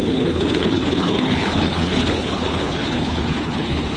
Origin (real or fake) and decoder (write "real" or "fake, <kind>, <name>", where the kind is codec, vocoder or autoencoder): fake, codec, HILCodec